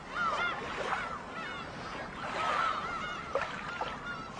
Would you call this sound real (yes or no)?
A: yes